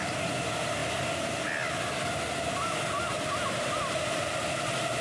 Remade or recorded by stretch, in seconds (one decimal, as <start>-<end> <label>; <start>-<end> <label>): 0.0-5.0 recorded